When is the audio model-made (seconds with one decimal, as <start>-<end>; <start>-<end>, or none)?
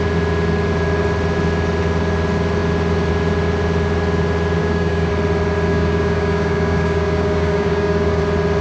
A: 4.6-5.1; 5.7-8.2